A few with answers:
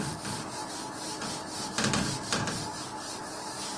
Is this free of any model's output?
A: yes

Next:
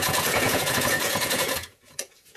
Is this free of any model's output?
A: no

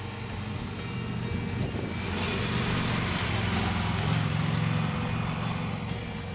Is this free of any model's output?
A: yes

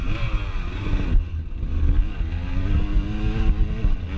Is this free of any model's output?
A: yes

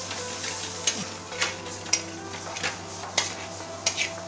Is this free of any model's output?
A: yes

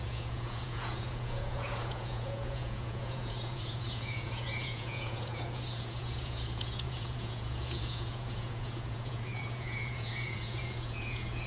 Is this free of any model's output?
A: no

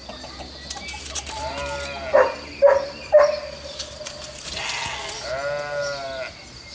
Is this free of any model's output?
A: yes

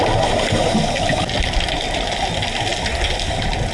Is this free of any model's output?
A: yes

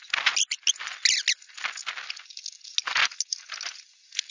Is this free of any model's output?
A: yes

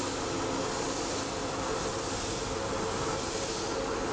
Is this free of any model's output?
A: yes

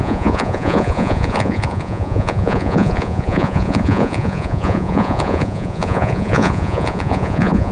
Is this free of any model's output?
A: no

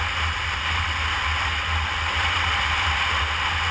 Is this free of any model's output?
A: yes